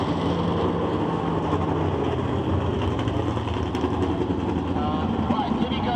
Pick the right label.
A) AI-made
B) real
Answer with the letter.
B